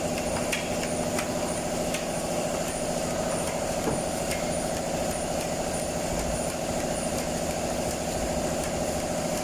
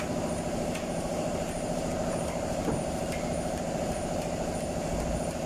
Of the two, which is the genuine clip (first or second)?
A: first